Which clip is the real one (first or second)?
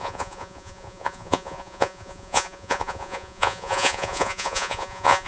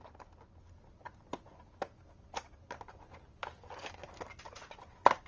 second